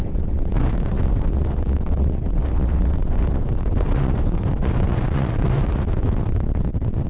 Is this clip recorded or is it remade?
remade